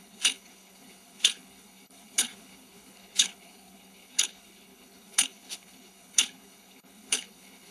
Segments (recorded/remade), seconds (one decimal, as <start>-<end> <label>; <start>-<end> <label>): 0.0-7.7 remade